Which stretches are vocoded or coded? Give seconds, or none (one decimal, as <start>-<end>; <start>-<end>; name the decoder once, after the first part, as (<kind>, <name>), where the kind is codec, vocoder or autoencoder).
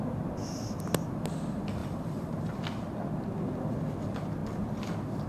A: 1.8-2.6 (vocoder, BigVGAN v2)